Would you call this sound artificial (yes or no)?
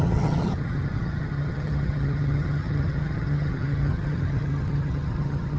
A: yes